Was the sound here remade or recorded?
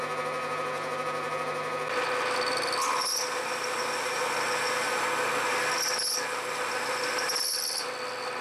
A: recorded